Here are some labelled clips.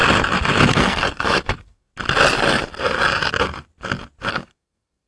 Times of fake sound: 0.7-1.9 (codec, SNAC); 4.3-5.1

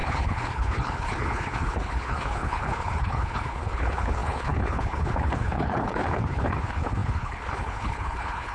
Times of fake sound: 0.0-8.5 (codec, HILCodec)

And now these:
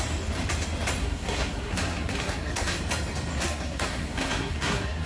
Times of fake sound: 1.0-2.8 (codec, SNAC); 3.4-5.1

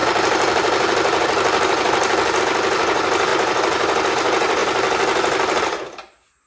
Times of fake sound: 0.0-2.4 (vocoder, BigVGAN v2)

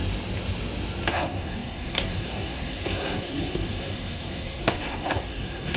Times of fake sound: 1.1-5.8 (codec, SNAC)

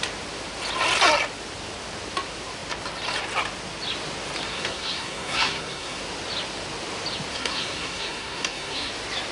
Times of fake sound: 4.5-6.0 (codec, SNAC); 7.3-8.9